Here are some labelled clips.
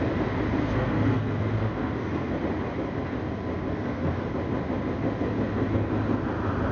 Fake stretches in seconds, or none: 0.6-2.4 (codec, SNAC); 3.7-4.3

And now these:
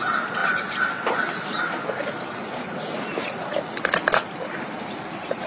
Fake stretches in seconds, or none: none

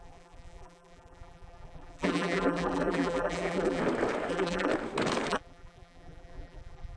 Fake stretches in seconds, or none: 0.0-3.8 (vocoder, BigVGAN v2); 4.3-4.7; 5.3-7.0

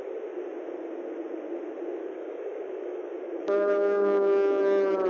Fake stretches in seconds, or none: 2.0-4.6 (codec, DAC)

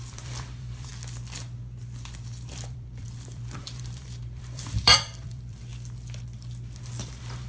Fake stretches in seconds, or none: 0.0-0.9 (vocoder, BigVGAN v2); 2.5-5.7; 7.0-7.5

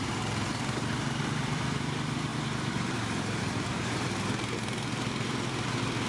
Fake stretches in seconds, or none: 0.0-6.1 (vocoder, BigVGAN v2)

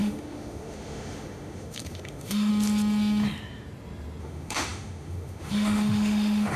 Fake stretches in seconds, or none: 0.0-2.5 (autoencoder, DAC-VAE); 4.2-6.6

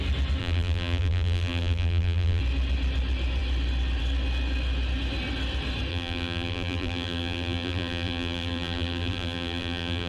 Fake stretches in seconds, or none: 0.4-2.4 (vocoder, BigVGAN v2); 5.9-10.1